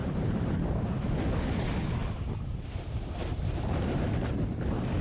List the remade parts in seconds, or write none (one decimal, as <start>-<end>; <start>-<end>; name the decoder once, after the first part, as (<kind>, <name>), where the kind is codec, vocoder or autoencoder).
0.0-1.0 (vocoder, BigVGAN v2); 2.0-4.5

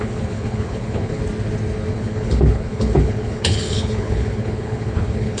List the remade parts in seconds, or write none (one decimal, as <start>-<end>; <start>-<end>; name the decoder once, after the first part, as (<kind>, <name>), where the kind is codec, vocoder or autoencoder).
0.0-1.2 (codec, HILCodec); 1.9-5.4

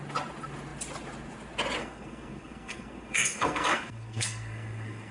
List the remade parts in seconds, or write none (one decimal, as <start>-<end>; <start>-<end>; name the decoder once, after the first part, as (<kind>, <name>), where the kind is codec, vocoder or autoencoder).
1.8-5.1 (codec, SNAC)

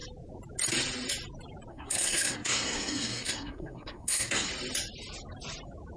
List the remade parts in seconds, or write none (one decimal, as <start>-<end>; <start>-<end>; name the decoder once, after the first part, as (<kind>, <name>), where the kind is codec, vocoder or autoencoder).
1.7-4.5 (codec, SNAC)

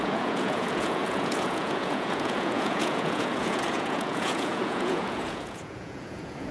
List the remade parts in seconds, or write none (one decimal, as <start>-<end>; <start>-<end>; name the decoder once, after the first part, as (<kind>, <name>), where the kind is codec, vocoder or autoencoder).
0.0-6.5 (vocoder, Vocos)